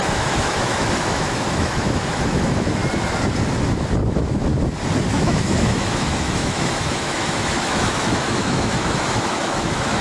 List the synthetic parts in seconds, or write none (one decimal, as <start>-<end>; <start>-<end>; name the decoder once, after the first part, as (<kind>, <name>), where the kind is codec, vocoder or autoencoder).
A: 0.0-2.8 (autoencoder, DAC-VAE); 4.1-4.5; 5.1-10.0